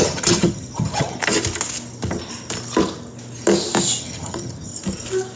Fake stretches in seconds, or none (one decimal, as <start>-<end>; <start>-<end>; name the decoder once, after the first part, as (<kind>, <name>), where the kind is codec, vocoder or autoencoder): 0.0-1.2 (vocoder, HiFi-GAN); 4.0-4.7